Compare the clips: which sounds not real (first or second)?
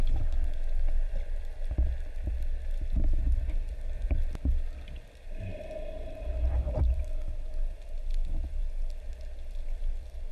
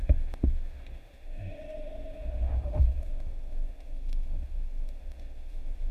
second